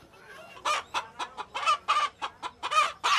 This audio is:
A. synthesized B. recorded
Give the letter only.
B